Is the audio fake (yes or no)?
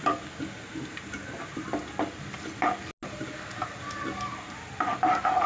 no